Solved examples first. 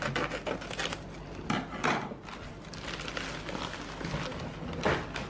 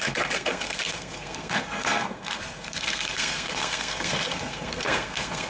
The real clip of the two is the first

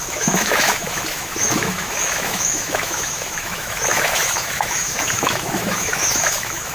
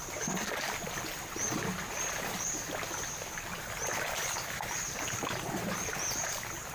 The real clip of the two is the second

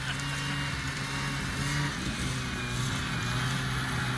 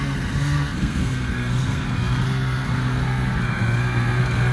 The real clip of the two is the first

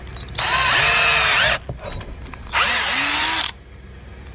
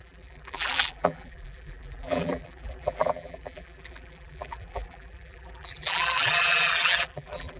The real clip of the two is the first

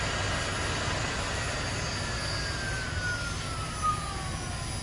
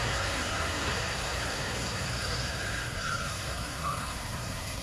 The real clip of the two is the first